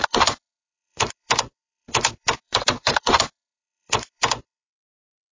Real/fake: fake